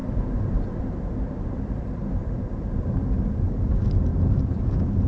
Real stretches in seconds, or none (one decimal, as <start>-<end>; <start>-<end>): 4.1-4.6